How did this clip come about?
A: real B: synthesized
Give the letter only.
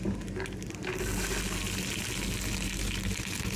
A